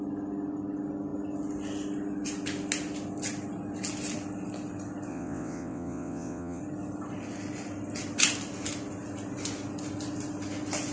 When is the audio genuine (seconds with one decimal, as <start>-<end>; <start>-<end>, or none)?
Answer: 0.0-5.1; 6.6-10.9